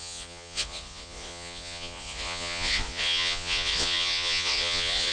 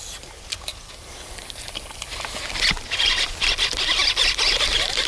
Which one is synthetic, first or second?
first